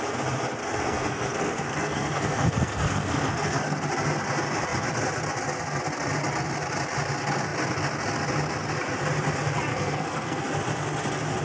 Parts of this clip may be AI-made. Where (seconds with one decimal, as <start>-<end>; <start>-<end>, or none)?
0.6-3.9; 9.7-10.4